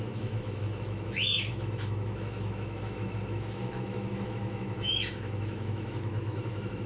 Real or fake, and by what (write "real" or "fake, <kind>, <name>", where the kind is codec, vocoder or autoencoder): fake, autoencoder, DAC-VAE